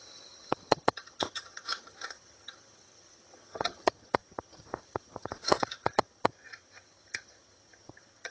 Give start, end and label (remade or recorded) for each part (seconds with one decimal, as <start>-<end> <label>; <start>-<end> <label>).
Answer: 0.0-8.3 remade

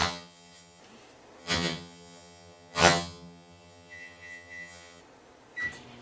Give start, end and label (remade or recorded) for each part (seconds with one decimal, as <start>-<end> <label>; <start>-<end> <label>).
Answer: 0.0-0.8 remade; 0.8-1.4 recorded; 1.4-5.0 remade; 5.0-6.0 recorded

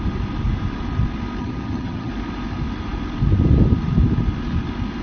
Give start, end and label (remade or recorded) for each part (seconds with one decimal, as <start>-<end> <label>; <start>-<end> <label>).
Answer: 0.0-1.4 recorded; 1.4-2.1 remade; 2.1-5.0 recorded

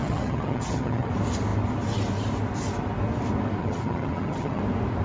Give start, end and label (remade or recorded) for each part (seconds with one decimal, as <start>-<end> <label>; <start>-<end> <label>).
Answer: 0.0-1.1 remade; 1.1-3.6 recorded; 3.6-4.6 remade; 4.6-5.0 recorded

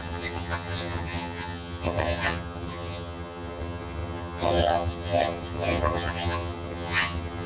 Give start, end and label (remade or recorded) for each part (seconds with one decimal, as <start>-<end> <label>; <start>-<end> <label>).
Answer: 0.0-7.5 remade